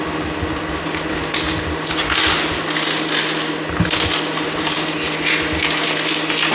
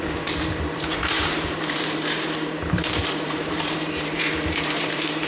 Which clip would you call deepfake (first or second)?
second